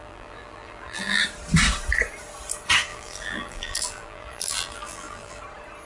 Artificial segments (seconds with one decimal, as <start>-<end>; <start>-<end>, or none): 0.0-1.2; 2.9-5.4